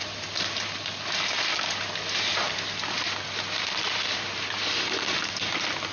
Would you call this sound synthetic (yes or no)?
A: no